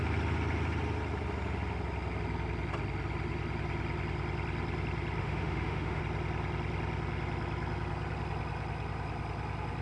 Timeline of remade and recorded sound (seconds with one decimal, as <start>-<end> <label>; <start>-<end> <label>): 0.0-5.2 recorded; 5.2-6.0 remade; 6.0-9.8 recorded